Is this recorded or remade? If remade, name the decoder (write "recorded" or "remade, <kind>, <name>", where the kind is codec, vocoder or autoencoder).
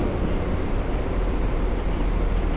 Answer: remade, vocoder, BigVGAN v2